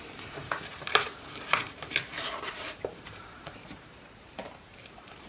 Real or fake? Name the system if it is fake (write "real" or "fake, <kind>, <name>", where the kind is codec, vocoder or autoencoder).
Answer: fake, vocoder, BigVGAN v2